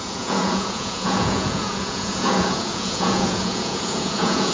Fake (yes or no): yes